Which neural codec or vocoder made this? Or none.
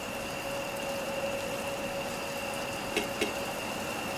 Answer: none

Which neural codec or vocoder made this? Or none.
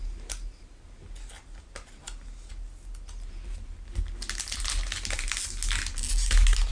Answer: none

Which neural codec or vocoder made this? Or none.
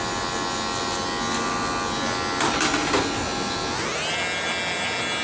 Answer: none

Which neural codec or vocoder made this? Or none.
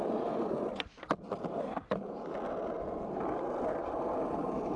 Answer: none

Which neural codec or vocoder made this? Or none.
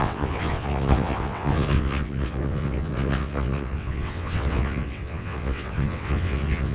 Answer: vocoder, WaveNeXt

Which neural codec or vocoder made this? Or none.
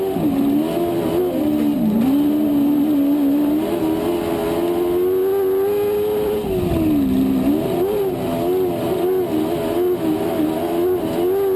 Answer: none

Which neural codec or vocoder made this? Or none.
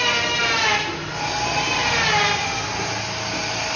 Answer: none